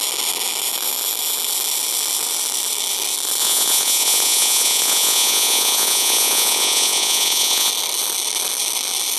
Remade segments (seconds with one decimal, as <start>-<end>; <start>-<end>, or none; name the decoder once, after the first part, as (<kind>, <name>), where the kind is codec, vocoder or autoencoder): 3.4-7.7 (vocoder, Vocos)